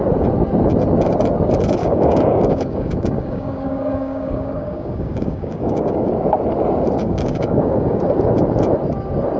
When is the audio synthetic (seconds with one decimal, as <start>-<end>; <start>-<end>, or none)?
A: 1.8-6.1; 7.0-8.0